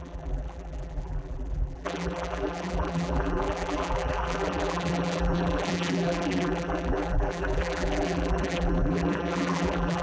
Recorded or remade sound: remade